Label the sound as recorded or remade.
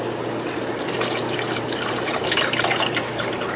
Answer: remade